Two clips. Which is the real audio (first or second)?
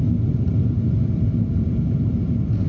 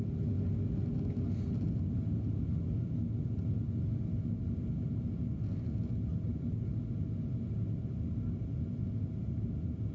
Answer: second